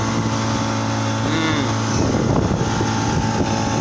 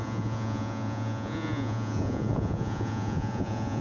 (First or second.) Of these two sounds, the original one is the first